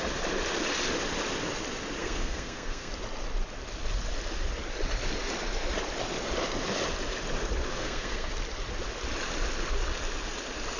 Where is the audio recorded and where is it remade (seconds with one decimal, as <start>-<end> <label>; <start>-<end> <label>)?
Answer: 0.0-2.0 recorded; 2.0-2.9 remade; 2.9-7.7 recorded; 7.7-8.3 remade; 8.3-10.8 recorded